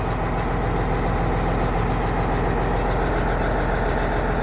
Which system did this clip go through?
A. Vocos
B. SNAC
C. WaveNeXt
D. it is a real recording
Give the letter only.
D